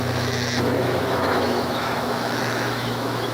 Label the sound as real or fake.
fake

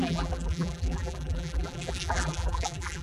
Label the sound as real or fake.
fake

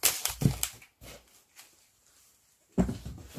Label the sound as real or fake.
real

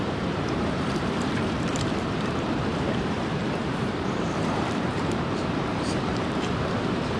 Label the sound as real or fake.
fake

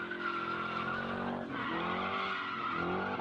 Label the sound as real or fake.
real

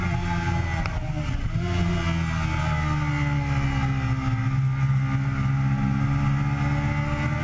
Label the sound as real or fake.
real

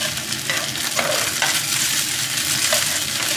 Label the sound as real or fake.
real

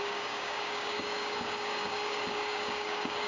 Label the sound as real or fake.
fake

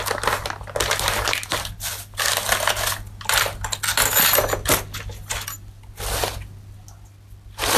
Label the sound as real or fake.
real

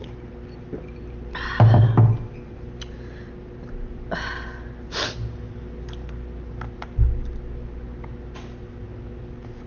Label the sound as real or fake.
real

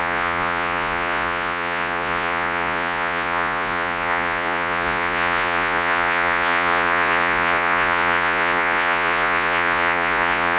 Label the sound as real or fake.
fake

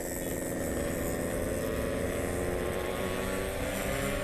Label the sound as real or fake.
real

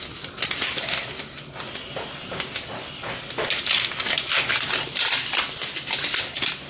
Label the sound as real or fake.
real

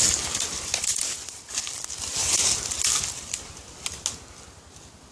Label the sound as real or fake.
real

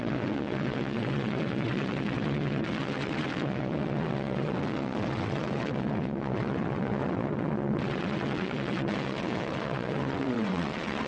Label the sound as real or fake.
fake